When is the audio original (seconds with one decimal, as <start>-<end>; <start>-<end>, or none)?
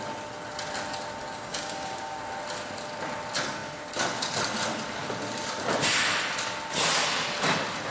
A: 0.0-1.2; 2.2-7.9